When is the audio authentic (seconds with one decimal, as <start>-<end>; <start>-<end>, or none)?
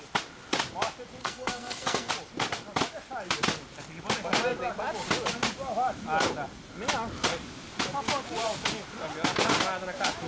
0.0-1.2; 2.1-10.3